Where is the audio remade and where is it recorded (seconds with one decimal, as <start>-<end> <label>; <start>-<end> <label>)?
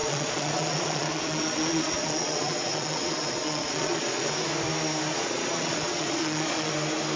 0.0-4.3 remade; 4.3-5.1 recorded; 5.1-6.7 remade; 6.7-7.2 recorded